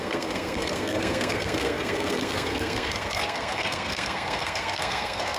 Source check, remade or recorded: remade